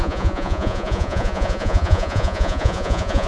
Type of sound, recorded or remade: remade